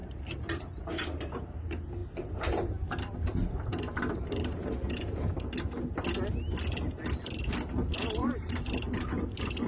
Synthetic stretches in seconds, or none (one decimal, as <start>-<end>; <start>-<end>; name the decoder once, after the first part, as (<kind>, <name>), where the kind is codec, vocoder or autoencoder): 0.0-1.4 (vocoder, BigVGAN v2); 2.0-3.0; 3.7-4.7; 8.2-9.7